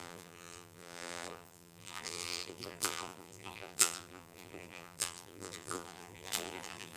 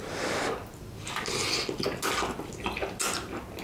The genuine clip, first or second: second